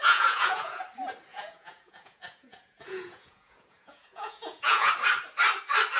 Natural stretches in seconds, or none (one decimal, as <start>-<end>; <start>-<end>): 0.8-1.3; 4.9-6.0